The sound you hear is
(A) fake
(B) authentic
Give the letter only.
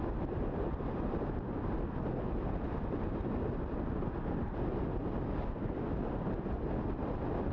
B